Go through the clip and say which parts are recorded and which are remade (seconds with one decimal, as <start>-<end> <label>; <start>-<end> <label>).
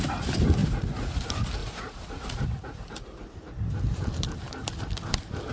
0.0-0.6 recorded; 0.6-1.2 remade; 1.2-1.6 recorded; 1.6-3.5 remade; 3.5-5.5 recorded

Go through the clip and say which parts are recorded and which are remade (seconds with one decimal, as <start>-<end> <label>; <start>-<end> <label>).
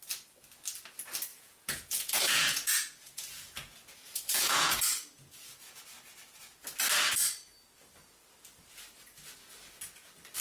0.0-1.3 recorded; 1.3-5.8 remade; 5.8-10.4 recorded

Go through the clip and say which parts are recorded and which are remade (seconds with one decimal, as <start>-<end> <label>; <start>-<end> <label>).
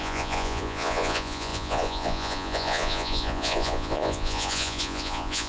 0.0-5.5 remade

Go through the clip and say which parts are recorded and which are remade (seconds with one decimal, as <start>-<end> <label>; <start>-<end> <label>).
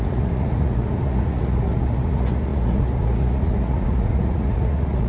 0.0-5.1 remade